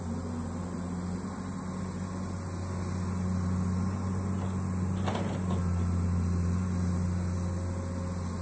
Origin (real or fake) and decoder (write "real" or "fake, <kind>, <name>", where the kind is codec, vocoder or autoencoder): real